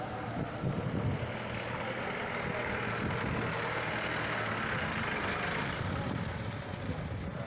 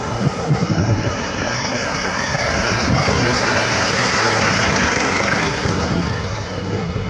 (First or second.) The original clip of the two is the first